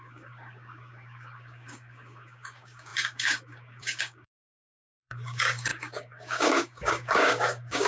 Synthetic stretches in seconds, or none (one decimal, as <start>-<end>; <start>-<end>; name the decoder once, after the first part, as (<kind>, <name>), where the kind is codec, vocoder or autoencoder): 0.0-7.9 (codec, DAC)